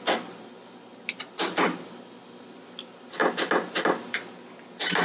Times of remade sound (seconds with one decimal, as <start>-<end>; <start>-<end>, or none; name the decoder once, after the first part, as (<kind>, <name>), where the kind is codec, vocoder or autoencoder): none